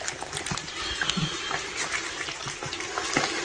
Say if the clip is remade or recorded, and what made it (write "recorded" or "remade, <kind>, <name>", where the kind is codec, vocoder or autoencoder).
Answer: recorded